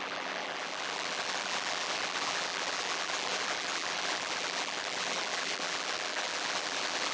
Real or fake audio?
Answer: fake